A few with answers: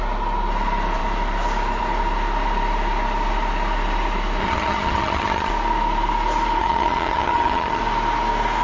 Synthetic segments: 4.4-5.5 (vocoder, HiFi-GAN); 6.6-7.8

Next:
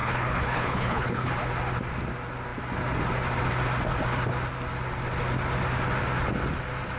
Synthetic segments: 0.0-1.3 (codec, HILCodec)

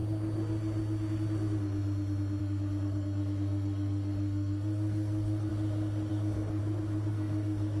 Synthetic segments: 2.4-5.5 (codec, SNAC); 6.1-6.6; 7.1-7.8